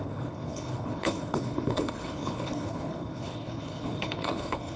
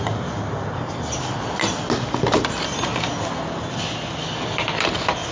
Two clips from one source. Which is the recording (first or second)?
second